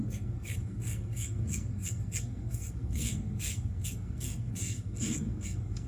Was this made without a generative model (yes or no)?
no